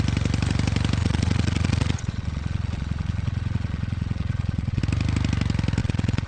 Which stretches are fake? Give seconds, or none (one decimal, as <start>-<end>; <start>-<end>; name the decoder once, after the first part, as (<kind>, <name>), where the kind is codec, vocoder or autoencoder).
1.0-4.8 (vocoder, Vocos); 5.8-6.3